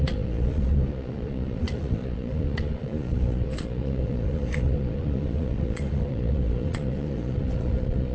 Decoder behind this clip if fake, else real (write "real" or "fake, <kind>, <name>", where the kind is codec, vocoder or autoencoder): fake, vocoder, Vocos